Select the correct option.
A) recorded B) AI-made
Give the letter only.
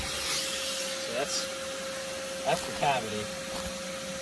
A